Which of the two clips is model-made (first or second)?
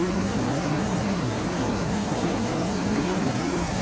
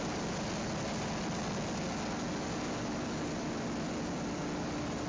first